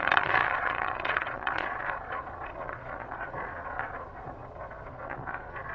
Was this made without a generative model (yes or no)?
no